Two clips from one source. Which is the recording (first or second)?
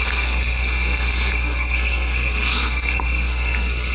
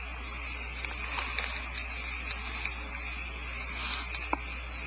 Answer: second